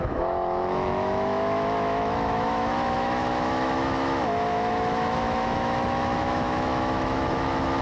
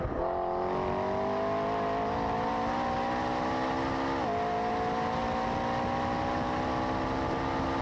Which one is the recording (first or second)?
second